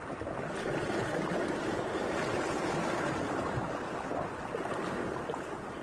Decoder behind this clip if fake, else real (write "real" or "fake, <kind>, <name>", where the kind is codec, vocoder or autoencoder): real